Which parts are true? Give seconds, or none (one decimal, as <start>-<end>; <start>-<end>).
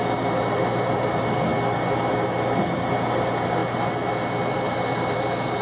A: 0.0-5.6